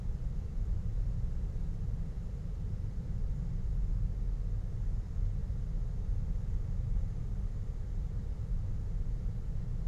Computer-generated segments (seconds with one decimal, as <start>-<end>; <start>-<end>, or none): 0.0-0.9; 2.3-3.9; 4.8-9.9